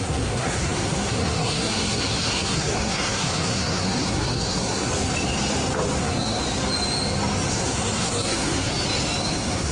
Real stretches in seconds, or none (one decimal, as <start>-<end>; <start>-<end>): 4.9-6.0; 6.4-7.5; 8.7-9.2